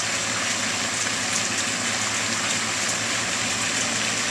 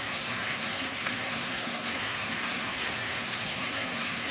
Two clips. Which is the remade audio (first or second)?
second